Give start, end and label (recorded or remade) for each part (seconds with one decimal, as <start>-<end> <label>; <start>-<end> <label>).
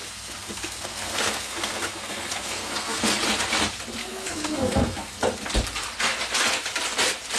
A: 0.0-3.0 remade; 3.0-4.0 recorded; 4.0-5.1 remade; 5.1-7.4 recorded